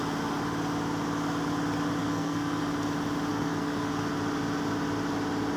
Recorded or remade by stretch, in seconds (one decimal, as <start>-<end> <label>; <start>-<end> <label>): 0.0-2.0 recorded; 2.0-2.6 remade; 2.6-3.3 recorded; 3.3-3.9 remade; 3.9-5.6 recorded